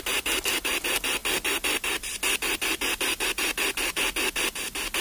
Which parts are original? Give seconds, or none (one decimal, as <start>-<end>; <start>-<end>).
0.0-5.0